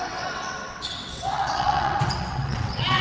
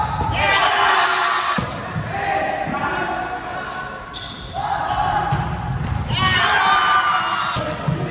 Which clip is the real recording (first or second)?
second